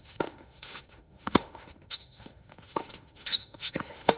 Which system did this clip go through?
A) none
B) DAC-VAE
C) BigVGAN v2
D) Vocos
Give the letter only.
B